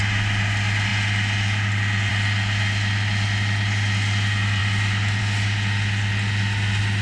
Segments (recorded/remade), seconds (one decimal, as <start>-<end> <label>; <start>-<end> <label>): 0.0-7.0 recorded